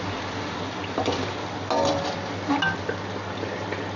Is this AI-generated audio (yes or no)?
no